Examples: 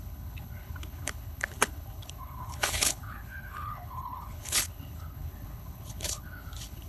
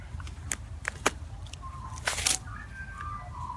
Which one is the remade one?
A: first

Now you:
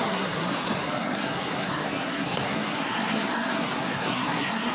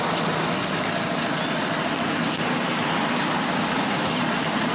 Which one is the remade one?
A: first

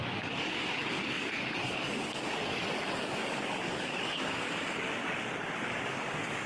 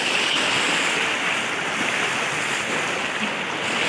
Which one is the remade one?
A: first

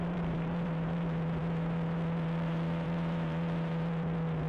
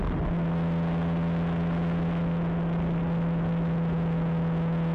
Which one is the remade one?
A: first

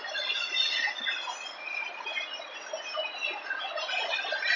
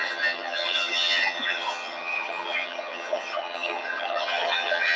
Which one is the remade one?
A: second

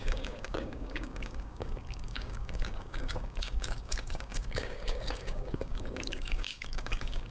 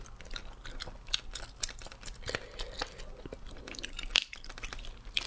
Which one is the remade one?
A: first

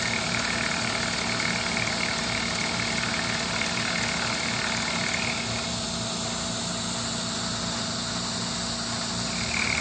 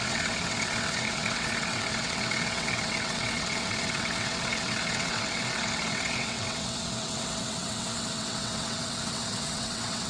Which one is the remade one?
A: second